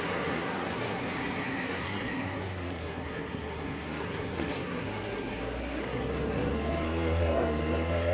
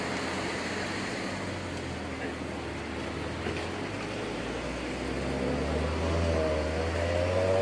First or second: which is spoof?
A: first